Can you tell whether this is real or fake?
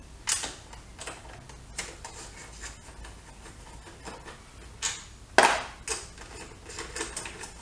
real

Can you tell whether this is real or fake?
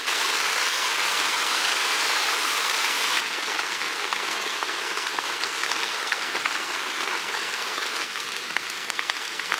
fake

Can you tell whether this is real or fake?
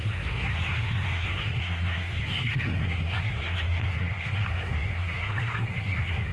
fake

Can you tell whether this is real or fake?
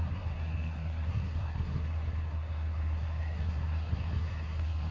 fake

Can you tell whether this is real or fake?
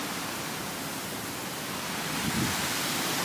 real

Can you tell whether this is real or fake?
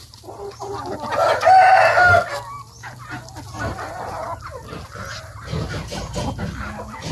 real